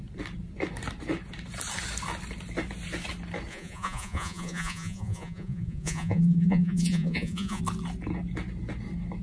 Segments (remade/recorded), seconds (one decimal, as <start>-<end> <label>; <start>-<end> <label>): 0.0-3.5 recorded; 3.5-7.6 remade; 7.6-9.2 recorded